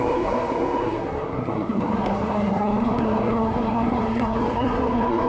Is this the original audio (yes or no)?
no